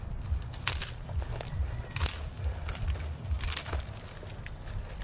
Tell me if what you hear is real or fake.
real